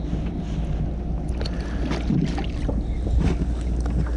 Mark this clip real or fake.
real